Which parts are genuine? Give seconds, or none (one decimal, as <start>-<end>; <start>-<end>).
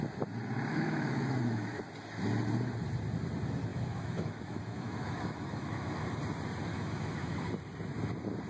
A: 0.0-0.7; 1.8-3.7; 6.2-6.7; 7.5-8.5